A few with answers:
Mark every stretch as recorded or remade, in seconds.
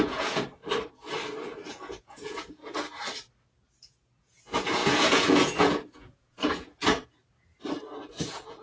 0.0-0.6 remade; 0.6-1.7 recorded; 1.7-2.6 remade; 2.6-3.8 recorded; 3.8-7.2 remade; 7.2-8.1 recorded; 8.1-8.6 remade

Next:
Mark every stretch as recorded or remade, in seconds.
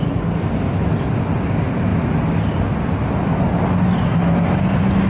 0.0-5.1 recorded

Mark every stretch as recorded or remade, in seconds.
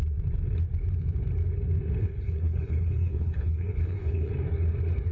0.0-2.0 recorded; 2.0-4.3 remade; 4.3-5.1 recorded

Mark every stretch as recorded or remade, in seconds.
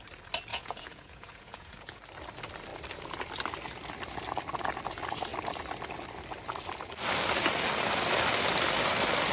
0.0-0.5 recorded; 0.5-2.0 remade; 2.0-9.3 recorded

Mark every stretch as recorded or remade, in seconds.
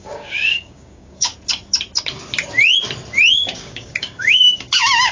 0.0-1.3 remade; 1.3-3.3 recorded; 3.3-5.1 remade